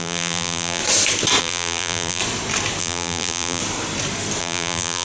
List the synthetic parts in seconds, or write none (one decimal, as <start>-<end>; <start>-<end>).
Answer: 0.0-0.8; 1.4-2.2; 2.8-3.6; 4.4-5.0